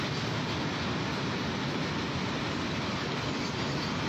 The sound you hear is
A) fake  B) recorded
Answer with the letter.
B